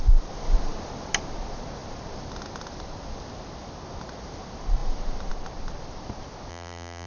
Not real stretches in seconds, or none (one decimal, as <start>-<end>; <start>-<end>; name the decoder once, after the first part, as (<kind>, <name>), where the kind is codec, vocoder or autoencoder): 6.5-7.1 (vocoder, BigVGAN v2)